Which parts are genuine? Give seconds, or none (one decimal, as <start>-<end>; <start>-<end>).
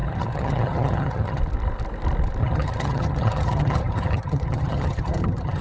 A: 1.4-2.4